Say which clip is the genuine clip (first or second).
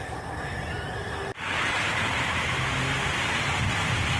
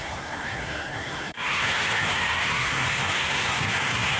first